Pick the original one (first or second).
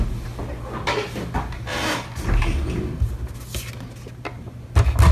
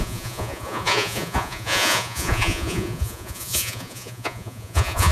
first